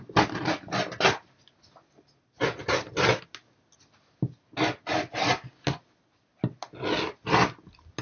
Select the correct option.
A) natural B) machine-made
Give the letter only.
A